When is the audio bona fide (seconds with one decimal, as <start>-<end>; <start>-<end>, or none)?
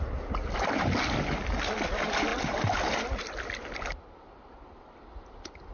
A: 0.0-5.7